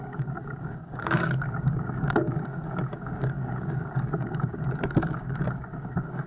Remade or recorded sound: remade